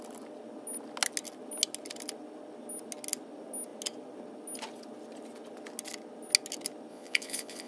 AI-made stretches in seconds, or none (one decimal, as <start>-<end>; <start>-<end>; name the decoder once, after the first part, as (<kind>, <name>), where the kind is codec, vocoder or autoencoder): 6.9-7.7 (vocoder, Vocos)